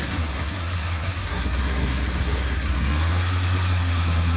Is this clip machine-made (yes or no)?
yes